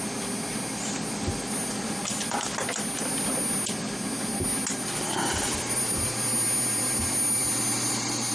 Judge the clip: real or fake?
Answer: real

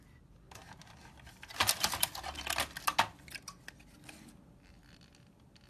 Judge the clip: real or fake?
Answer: real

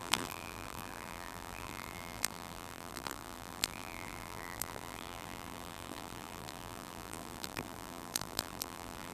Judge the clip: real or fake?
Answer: fake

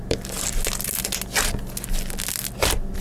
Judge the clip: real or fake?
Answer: real